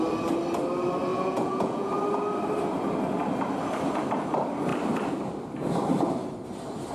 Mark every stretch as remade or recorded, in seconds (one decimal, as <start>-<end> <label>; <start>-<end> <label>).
0.0-1.1 recorded; 1.1-1.9 remade; 1.9-6.9 recorded